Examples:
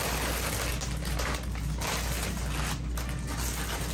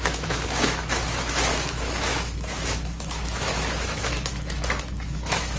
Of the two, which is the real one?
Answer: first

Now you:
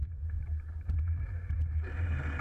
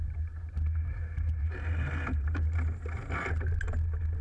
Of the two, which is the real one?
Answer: second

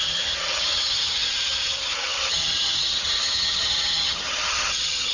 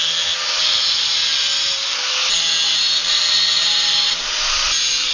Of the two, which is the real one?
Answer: second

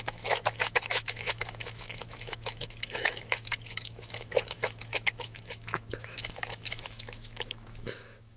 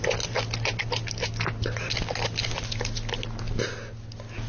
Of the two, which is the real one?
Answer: second